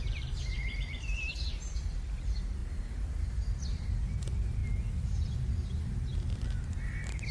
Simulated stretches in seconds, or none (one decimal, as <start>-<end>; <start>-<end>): 0.0-2.6; 3.2-4.6; 5.8-7.3